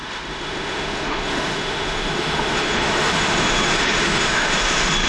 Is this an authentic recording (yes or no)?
no